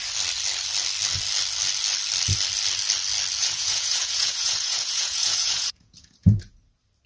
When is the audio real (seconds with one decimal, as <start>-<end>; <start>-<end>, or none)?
0.0-3.4; 6.5-7.1